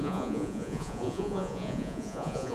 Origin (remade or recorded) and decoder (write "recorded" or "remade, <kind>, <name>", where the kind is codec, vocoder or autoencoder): remade, vocoder, Vocos